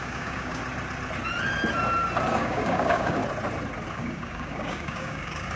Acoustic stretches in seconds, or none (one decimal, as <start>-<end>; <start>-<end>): 0.6-2.3; 3.2-3.9